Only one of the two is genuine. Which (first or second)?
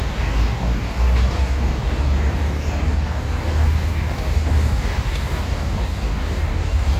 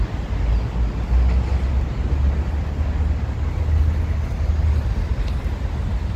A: second